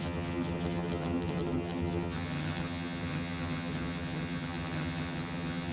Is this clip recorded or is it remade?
remade